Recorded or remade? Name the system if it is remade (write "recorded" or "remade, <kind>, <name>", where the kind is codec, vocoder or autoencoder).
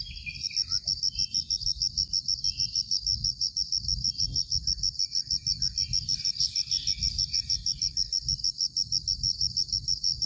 recorded